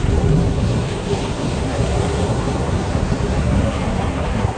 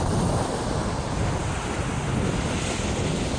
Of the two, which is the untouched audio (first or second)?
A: second